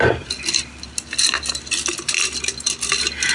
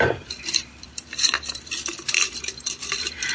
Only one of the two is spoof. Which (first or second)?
second